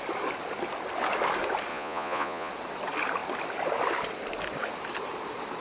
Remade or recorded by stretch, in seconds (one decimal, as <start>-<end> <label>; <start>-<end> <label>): 0.0-1.7 recorded; 1.7-2.5 remade; 2.5-5.6 recorded